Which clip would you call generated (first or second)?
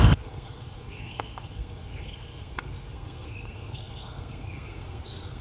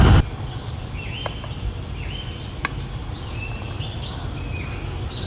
first